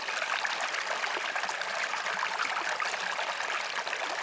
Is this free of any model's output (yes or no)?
yes